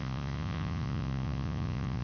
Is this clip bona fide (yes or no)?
no